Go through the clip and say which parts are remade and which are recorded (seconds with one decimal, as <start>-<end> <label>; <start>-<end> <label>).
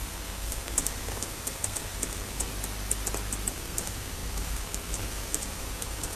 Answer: 0.0-2.5 remade; 2.5-3.5 recorded; 3.5-6.2 remade